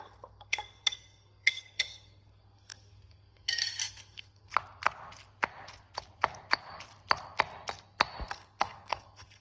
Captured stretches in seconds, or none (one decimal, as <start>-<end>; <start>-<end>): 4.5-8.3